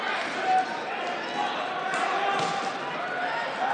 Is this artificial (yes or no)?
no